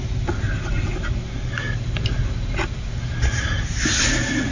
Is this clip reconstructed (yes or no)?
no